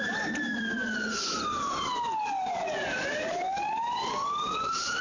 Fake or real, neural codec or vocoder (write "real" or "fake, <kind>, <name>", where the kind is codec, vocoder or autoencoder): real